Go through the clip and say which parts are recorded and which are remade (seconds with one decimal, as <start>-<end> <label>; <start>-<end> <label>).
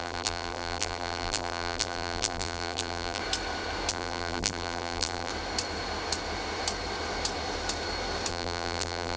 0.0-3.2 remade; 3.2-3.9 recorded; 3.9-5.3 remade; 5.3-8.3 recorded; 8.3-9.2 remade